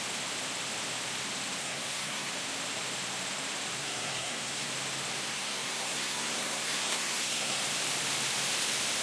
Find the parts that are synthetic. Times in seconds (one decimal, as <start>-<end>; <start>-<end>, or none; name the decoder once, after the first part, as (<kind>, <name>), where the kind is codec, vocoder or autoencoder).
1.6-2.3 (codec, SNAC); 3.8-4.7; 5.3-7.6